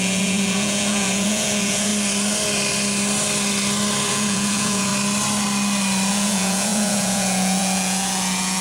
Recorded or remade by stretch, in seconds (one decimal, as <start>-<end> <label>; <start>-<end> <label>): 0.0-1.9 remade; 1.9-4.1 recorded; 4.1-4.9 remade; 4.9-6.1 recorded; 6.1-8.6 remade